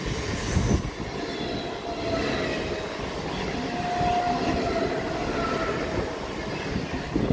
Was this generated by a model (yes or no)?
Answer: no